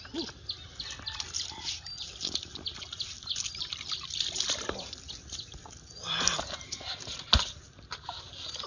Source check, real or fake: real